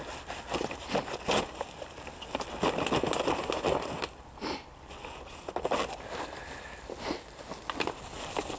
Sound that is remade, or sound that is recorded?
recorded